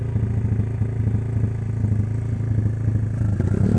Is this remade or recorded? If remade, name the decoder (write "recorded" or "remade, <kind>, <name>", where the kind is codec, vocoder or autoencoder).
recorded